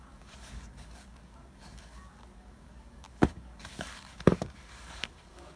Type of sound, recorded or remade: remade